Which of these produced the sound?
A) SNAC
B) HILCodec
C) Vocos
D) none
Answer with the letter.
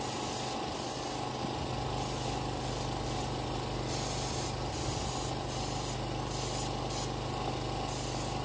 D